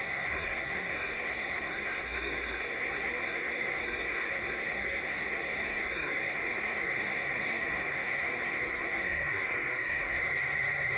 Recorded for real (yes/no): no